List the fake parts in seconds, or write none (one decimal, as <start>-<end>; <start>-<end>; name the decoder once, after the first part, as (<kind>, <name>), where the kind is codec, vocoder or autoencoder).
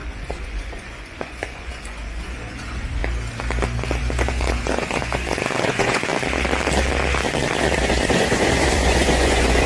0.0-3.0 (vocoder, Vocos); 4.0-6.1; 7.8-9.7